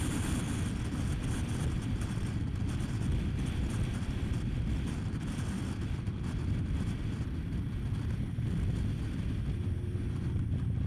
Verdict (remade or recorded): recorded